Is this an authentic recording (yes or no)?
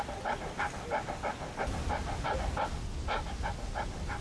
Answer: yes